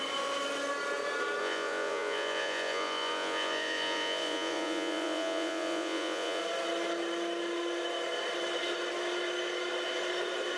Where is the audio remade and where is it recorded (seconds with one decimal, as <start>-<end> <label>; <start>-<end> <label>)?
0.0-1.4 recorded; 1.4-6.4 remade; 6.4-10.6 recorded